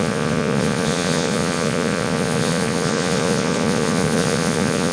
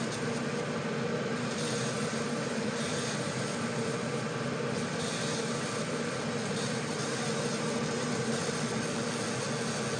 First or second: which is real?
second